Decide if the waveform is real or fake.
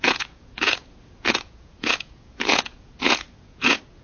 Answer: fake